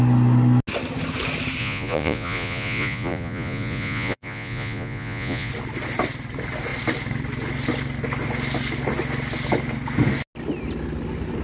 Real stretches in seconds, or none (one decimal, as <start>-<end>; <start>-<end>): 0.0-1.6; 5.5-11.4